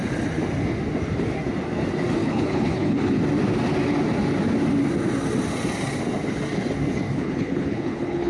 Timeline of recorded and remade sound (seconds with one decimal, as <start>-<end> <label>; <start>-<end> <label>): 0.0-2.2 recorded; 2.2-3.2 remade; 3.2-7.1 recorded; 7.1-8.3 remade